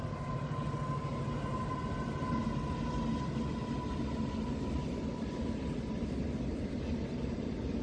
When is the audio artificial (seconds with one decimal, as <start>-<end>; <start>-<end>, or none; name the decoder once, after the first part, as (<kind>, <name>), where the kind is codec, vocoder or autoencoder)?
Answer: none